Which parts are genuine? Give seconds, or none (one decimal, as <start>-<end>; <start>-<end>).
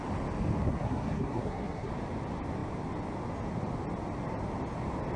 0.0-0.6; 1.9-5.2